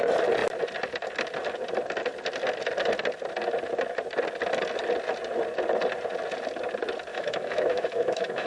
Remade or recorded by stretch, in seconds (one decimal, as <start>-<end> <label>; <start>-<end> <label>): 0.0-7.1 recorded; 7.1-8.5 remade